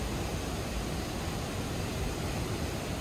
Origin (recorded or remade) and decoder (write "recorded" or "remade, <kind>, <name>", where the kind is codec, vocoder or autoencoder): recorded